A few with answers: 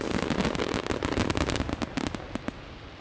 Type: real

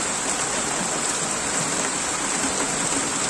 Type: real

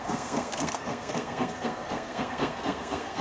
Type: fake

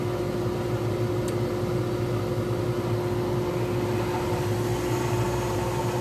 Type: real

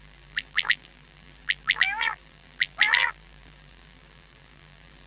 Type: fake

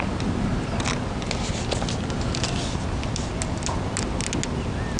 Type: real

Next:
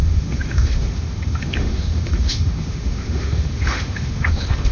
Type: fake